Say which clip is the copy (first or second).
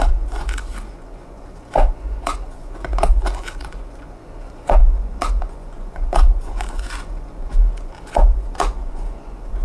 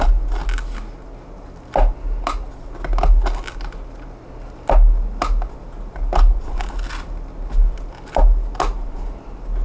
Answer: first